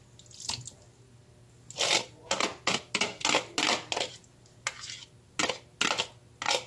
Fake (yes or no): no